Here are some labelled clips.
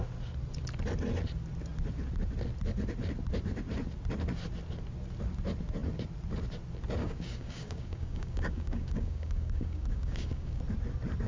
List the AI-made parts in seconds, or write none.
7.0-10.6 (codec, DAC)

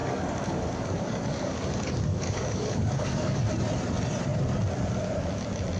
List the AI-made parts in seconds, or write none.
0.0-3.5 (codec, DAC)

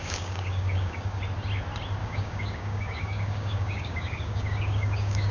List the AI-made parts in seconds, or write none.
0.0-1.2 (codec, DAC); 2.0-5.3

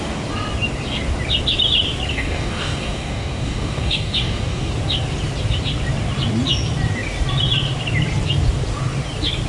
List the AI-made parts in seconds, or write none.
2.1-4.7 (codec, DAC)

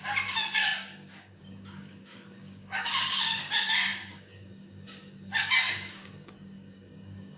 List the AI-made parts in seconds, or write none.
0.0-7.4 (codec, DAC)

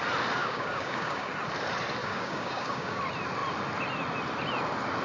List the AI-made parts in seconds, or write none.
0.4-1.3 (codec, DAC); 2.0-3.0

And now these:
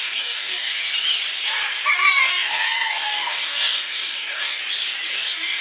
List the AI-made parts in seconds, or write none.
0.0-0.8 (codec, DAC); 1.9-4.6; 5.1-5.6

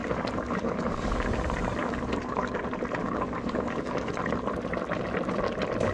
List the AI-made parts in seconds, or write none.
0.0-1.1 (codec, DAC); 1.8-2.6; 3.0-4.1